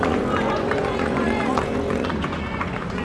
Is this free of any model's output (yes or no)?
no